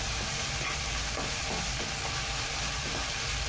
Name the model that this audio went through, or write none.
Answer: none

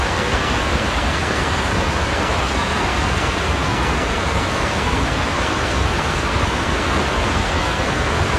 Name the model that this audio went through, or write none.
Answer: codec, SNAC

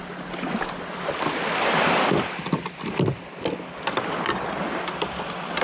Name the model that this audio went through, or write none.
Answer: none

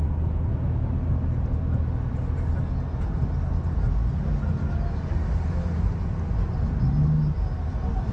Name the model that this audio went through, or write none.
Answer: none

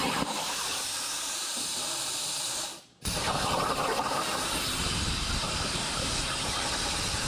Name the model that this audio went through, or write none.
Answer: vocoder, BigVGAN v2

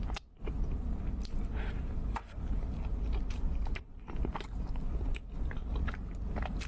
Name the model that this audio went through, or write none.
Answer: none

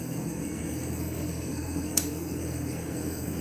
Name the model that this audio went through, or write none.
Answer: codec, SNAC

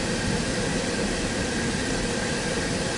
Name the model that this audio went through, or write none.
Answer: none